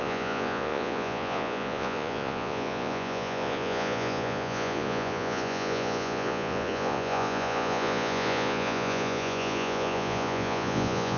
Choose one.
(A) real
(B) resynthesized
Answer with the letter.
B